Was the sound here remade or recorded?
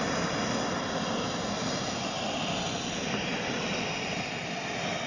recorded